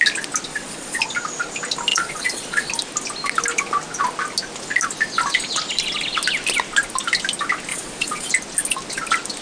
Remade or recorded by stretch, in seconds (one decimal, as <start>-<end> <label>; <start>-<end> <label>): 0.0-0.5 recorded; 0.5-1.0 remade; 1.0-1.9 recorded; 1.9-2.7 remade; 2.7-7.7 recorded; 7.7-8.3 remade; 8.3-9.4 recorded